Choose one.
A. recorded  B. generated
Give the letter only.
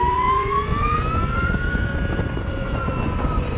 B